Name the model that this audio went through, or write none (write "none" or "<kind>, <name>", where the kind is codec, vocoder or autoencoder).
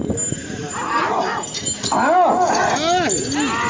none